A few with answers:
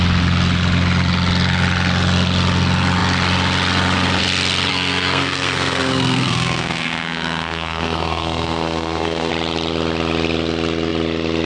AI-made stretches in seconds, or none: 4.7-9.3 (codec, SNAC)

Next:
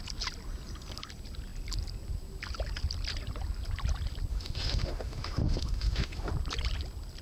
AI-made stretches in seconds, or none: 4.3-6.3 (autoencoder, DAC-VAE)

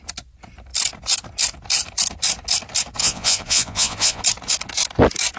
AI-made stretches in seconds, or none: 3.0-4.2 (vocoder, Vocos)

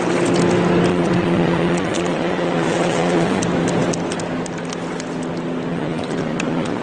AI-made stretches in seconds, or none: 0.9-3.4 (vocoder, Vocos); 5.7-6.8

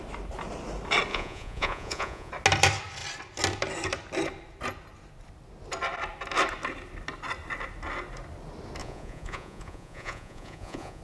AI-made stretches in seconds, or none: 1.1-2.3 (vocoder, Vocos); 8.8-11.0

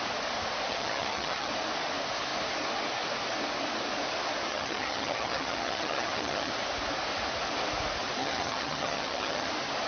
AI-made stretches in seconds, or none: 0.7-1.5 (vocoder, HiFi-GAN); 4.5-6.5; 8.2-9.5